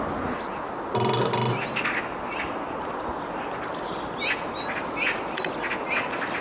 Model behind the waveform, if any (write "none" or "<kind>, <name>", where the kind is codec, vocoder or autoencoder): none